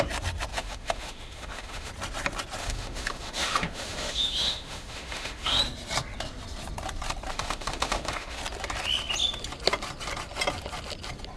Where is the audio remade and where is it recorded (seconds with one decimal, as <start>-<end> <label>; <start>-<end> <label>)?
0.0-0.5 recorded; 0.5-1.9 remade; 1.9-2.6 recorded; 2.6-5.6 remade; 5.6-7.3 recorded; 7.3-8.4 remade; 8.4-11.4 recorded